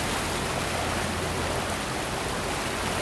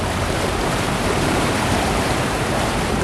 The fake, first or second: second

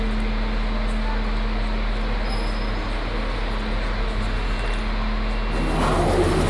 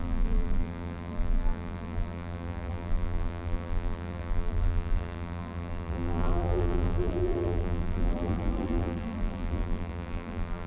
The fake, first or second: second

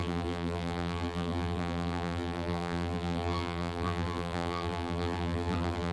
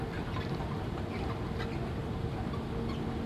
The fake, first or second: first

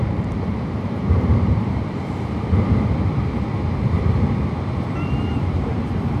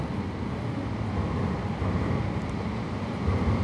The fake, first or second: first